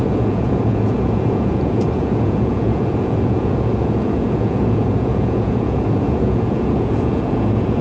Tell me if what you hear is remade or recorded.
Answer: remade